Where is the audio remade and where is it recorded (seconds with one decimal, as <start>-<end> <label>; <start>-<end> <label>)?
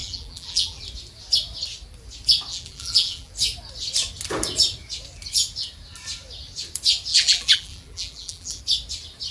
0.0-0.8 remade; 0.8-2.5 recorded; 2.5-3.3 remade; 3.3-7.1 recorded; 7.1-8.6 remade; 8.6-9.3 recorded